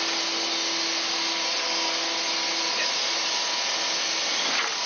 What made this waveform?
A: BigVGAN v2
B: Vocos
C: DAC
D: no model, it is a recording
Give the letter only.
D